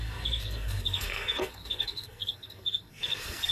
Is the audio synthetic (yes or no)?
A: yes